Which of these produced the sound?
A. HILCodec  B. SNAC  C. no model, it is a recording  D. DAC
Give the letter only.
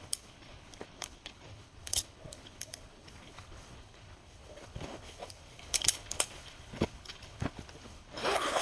A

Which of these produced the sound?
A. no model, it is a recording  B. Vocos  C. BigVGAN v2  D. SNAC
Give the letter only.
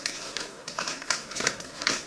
D